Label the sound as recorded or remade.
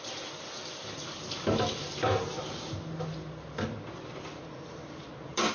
recorded